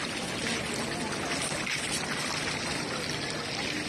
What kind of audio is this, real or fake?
real